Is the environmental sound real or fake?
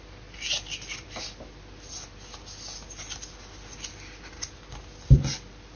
real